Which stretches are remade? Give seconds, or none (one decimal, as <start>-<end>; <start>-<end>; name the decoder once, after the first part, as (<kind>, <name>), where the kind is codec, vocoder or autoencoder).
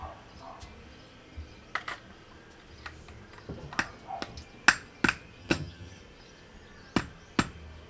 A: 5.4-6.0 (vocoder, HiFi-GAN)